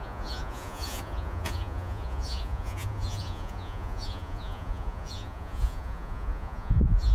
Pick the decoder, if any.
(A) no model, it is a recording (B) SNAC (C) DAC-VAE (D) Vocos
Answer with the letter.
D